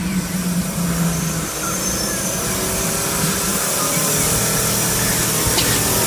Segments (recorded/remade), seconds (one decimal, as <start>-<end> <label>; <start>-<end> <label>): 0.0-3.5 recorded; 3.5-4.4 remade; 4.4-6.1 recorded